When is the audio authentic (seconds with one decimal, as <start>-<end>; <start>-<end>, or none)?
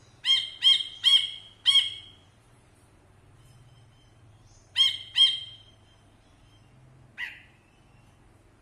0.0-2.3; 6.5-8.6